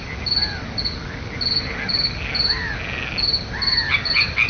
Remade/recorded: recorded